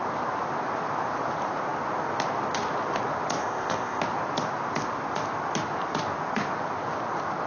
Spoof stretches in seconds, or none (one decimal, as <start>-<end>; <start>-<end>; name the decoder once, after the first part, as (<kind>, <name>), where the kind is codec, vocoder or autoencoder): 3.4-4.0 (codec, ZipCodec)